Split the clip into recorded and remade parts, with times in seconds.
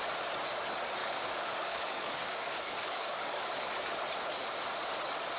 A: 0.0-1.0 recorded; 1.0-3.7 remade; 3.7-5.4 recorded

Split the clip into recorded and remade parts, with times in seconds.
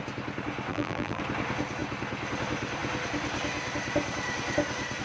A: 0.0-0.7 recorded; 0.7-1.2 remade; 1.2-5.0 recorded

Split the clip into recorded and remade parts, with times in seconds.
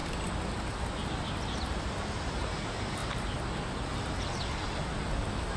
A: 0.0-5.6 recorded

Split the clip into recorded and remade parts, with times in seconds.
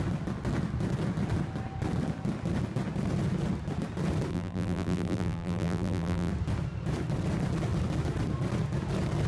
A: 0.0-4.3 recorded; 4.3-6.3 remade; 6.3-9.3 recorded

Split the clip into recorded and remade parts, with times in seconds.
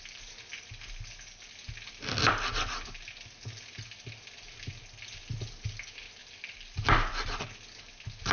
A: 0.0-8.3 recorded